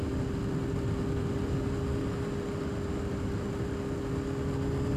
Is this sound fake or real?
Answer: real